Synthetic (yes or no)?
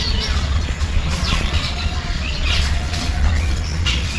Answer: yes